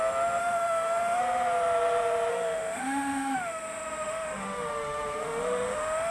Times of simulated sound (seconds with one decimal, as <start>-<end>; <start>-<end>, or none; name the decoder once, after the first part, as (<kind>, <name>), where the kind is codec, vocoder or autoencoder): 0.4-1.2 (autoencoder, DAC-VAE); 2.3-6.1